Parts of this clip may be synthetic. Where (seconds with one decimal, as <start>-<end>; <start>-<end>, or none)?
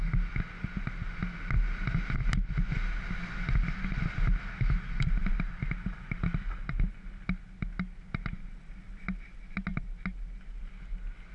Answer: none